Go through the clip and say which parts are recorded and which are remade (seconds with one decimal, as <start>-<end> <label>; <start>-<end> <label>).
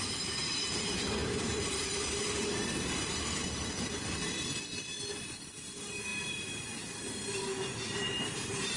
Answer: 0.0-8.8 remade